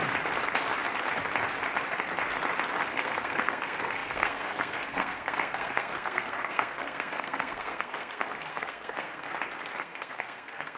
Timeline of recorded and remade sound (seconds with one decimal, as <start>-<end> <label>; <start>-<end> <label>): 0.0-2.8 recorded; 2.8-9.3 remade; 9.3-9.8 recorded; 9.8-10.8 remade

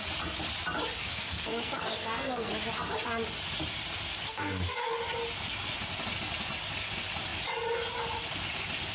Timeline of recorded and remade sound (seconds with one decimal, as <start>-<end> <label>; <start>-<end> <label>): 0.0-1.0 recorded; 1.0-2.5 remade; 2.5-4.2 recorded; 4.2-4.9 remade; 4.9-8.9 recorded

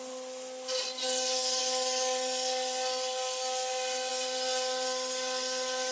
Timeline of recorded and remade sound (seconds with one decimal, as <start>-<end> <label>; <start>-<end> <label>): 0.0-5.9 recorded

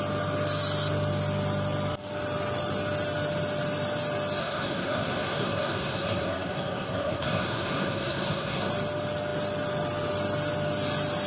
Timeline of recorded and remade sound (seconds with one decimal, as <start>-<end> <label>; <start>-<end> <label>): 0.0-4.4 recorded; 4.4-8.7 remade; 8.7-11.3 recorded

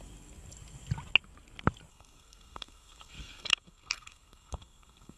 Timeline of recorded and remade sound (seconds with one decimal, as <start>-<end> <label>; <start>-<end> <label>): 0.0-1.9 recorded; 1.9-5.2 remade